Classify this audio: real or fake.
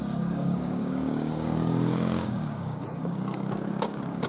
fake